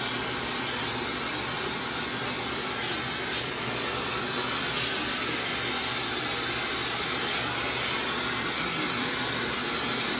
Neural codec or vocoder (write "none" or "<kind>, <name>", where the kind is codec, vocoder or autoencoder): none